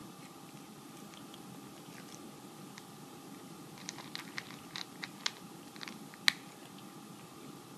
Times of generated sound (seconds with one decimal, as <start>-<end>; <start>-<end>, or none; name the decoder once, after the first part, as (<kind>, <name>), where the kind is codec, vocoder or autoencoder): 0.0-0.9 (vocoder, BigVGAN v2)